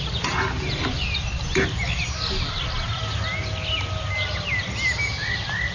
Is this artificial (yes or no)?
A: no